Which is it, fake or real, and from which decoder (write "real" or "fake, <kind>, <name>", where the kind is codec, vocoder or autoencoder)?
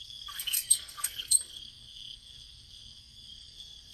fake, codec, SNAC